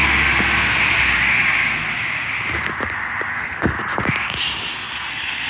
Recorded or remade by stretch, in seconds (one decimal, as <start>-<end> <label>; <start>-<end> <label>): 0.0-3.3 recorded; 3.3-3.7 remade; 3.7-5.1 recorded; 5.1-5.5 remade